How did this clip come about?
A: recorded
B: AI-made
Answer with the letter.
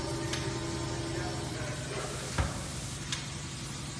A